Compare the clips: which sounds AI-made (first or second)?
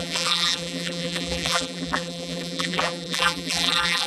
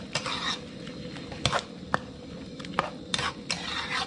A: first